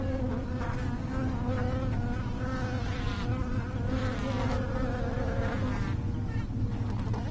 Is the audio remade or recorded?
recorded